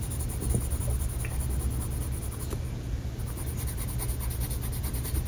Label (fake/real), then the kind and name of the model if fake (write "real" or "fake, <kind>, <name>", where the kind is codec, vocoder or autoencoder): real